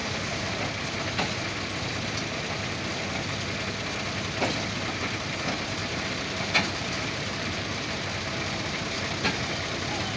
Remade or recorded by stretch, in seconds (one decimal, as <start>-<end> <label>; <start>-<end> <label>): 0.0-5.8 recorded; 5.8-8.1 remade; 8.1-10.2 recorded